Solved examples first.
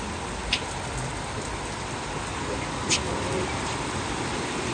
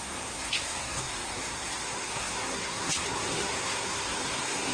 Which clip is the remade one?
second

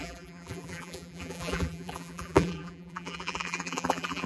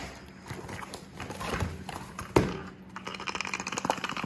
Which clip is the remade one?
first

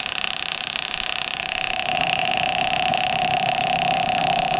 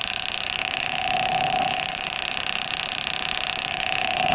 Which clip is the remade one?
first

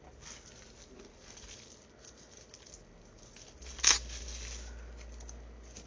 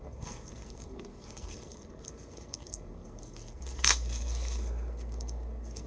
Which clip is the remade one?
second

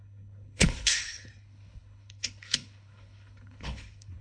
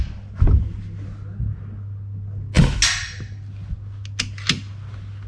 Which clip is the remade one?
first